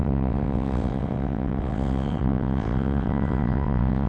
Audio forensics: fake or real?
fake